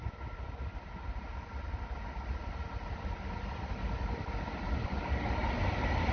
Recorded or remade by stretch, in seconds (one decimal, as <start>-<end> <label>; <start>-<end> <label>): 0.0-6.1 recorded